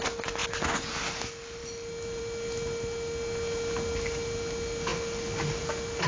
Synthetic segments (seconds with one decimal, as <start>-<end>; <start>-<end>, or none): none